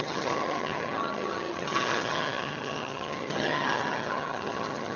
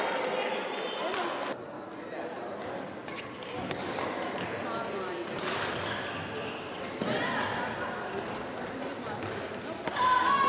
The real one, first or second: second